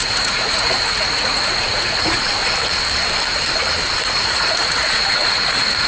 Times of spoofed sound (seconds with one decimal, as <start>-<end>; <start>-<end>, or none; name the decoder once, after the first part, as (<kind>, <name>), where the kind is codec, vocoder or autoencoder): 0.0-2.4 (vocoder, Vocos); 4.0-5.9